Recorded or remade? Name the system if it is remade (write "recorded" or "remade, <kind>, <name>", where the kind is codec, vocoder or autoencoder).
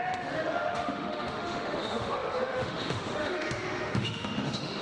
remade, autoencoder, DAC-VAE